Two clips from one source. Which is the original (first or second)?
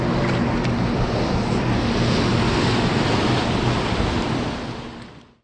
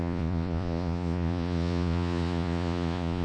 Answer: first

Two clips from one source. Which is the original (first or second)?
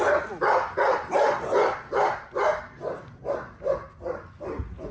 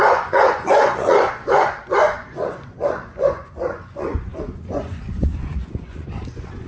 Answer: first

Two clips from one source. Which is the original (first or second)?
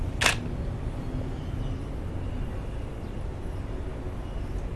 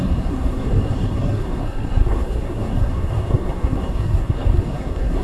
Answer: first